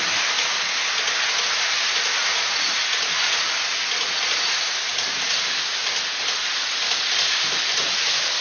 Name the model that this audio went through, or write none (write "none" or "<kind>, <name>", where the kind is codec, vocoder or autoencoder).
none